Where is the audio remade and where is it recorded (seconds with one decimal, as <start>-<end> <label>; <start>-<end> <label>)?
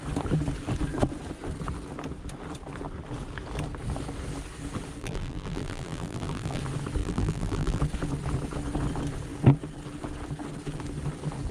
0.0-5.0 recorded; 5.0-6.6 remade; 6.6-7.0 recorded; 7.0-7.8 remade; 7.8-11.5 recorded